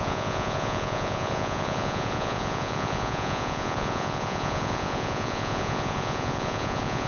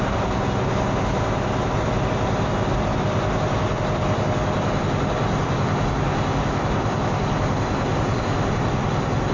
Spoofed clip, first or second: first